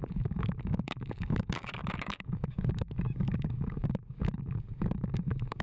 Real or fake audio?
fake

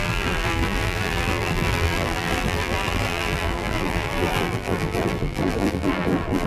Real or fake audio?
fake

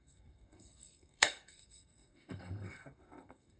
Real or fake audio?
fake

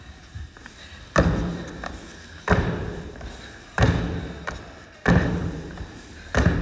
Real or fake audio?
real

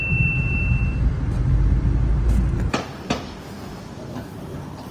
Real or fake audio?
real